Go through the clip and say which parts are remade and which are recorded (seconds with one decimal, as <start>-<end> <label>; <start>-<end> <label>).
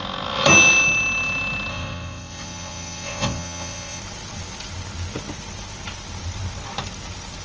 0.0-1.7 recorded; 1.7-4.0 remade; 4.0-7.4 recorded